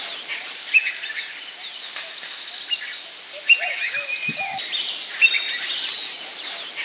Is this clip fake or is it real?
real